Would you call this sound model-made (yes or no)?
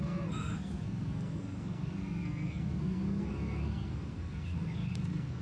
yes